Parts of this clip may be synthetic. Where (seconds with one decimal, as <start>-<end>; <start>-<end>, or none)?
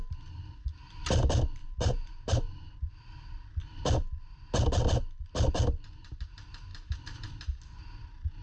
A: 1.6-2.9; 6.7-7.8